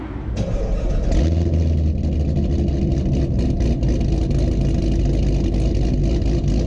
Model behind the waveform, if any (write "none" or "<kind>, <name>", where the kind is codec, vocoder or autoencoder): none